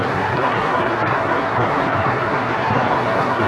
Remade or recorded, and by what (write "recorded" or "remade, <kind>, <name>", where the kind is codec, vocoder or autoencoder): remade, codec, SNAC